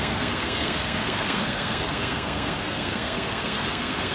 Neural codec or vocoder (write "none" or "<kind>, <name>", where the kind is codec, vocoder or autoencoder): codec, SNAC